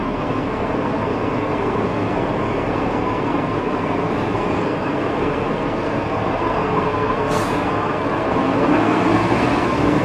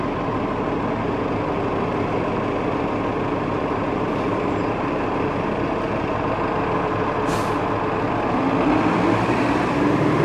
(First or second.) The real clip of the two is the second